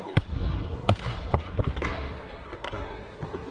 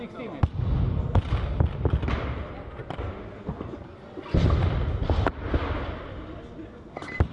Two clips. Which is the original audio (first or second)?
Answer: second